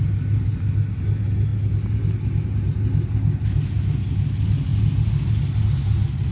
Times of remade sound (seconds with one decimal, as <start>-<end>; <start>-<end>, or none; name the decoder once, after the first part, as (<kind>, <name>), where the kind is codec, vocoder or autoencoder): none